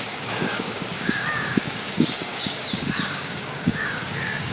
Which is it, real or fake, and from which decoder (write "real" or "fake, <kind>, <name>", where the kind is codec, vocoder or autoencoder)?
fake, codec, DAC